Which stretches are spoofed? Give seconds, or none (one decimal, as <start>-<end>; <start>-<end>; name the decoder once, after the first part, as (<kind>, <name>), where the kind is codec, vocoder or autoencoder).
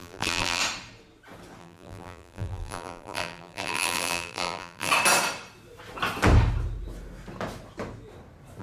0.0-0.6 (vocoder, BigVGAN v2); 1.6-4.9